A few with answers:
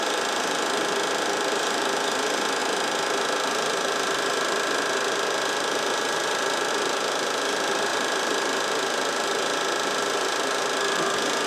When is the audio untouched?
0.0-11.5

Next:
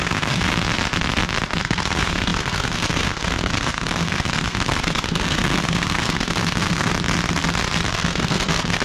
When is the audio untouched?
0.5-1.6; 6.9-7.9